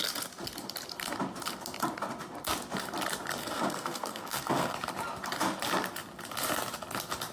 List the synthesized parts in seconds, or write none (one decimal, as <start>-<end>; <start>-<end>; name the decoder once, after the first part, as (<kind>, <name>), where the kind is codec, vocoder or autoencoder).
3.4-4.7 (codec, SNAC)